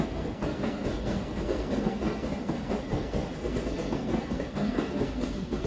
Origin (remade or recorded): remade